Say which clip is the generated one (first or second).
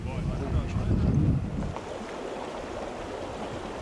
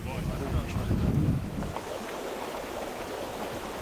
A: second